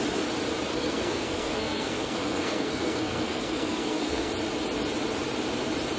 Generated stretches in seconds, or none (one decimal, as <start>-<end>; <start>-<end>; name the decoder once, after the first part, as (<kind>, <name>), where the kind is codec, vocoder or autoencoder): 0.7-4.3 (codec, SNAC)